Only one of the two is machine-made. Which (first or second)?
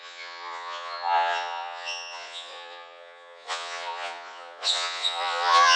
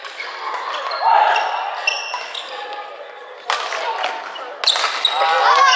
first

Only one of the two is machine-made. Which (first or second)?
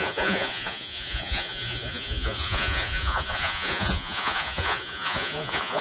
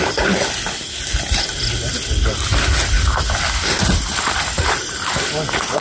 first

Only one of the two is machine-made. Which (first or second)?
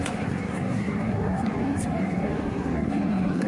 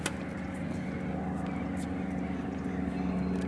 first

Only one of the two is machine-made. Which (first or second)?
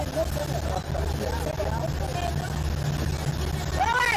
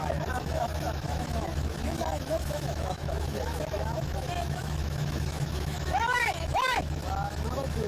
second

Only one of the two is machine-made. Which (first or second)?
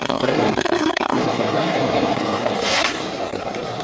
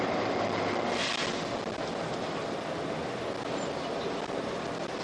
first